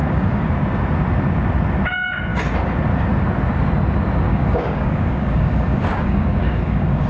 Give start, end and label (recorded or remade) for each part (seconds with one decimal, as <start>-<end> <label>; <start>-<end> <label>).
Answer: 0.0-0.5 remade; 0.5-4.3 recorded; 4.3-7.1 remade